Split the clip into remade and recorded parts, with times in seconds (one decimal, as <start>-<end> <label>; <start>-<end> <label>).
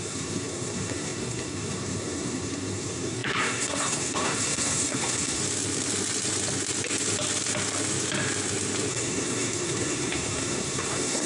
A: 0.0-5.4 remade; 5.4-8.9 recorded; 8.9-11.3 remade